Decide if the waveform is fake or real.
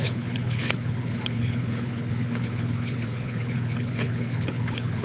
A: fake